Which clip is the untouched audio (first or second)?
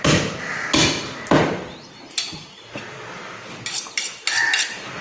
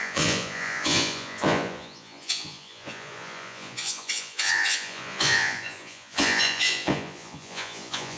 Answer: first